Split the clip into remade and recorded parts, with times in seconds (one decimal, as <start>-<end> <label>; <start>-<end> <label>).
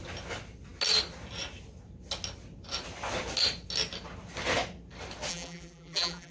0.0-5.3 recorded; 5.3-6.3 remade